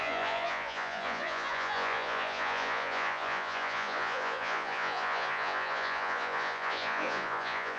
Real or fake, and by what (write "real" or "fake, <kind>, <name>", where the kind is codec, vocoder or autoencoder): fake, vocoder, Vocos